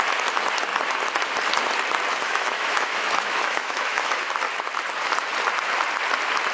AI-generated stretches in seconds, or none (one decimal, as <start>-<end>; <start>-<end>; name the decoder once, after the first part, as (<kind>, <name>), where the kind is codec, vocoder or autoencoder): 2.1-4.2 (autoencoder, DAC-VAE)